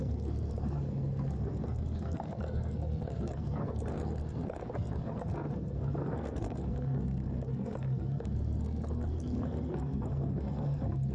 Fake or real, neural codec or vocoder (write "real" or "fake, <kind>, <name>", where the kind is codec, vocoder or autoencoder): fake, codec, SNAC